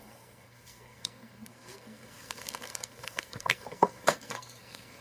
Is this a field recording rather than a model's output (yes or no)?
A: no